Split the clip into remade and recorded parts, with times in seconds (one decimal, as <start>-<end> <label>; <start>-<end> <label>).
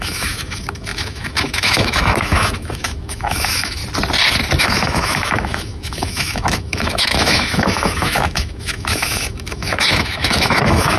0.0-3.8 remade; 3.8-4.6 recorded; 4.6-11.0 remade